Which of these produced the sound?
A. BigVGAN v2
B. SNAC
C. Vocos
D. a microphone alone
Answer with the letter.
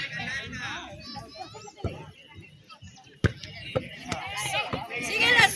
D